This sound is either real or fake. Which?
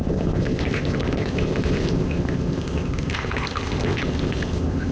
fake